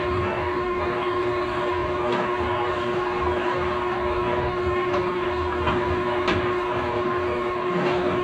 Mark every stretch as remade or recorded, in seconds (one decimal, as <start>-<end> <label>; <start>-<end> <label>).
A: 0.0-8.2 remade